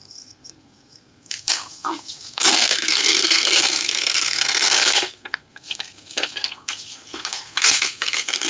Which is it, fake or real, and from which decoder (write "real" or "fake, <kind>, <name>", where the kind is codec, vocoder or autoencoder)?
fake, codec, SNAC